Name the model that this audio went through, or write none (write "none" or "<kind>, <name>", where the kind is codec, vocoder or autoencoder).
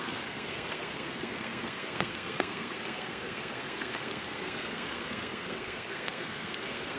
codec, SNAC